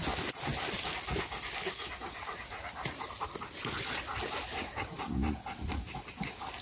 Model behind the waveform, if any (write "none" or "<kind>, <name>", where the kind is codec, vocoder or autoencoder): none